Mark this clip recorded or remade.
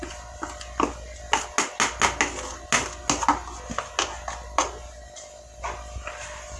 recorded